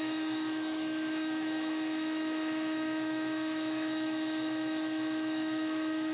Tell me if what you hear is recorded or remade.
remade